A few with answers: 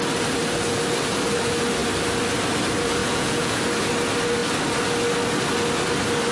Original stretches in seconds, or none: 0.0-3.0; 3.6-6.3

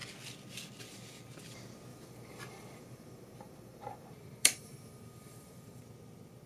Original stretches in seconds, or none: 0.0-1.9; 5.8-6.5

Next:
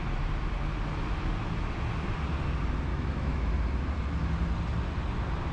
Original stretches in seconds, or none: 0.0-2.9; 3.5-5.5

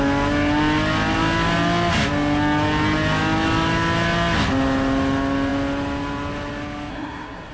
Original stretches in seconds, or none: 0.0-6.9

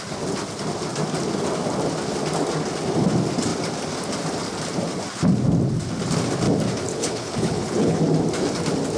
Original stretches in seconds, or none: 0.0-6.9; 8.0-9.0

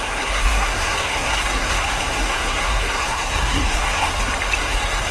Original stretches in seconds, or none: 4.1-4.6